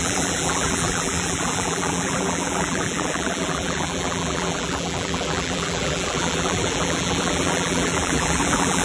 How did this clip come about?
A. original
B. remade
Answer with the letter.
B